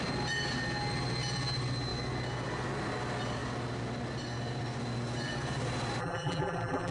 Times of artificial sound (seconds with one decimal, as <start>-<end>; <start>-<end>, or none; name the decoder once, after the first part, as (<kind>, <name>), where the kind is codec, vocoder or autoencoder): 6.0-6.9 (vocoder, BigVGAN v2)